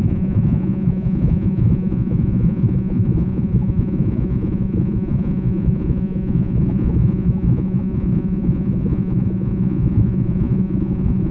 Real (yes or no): no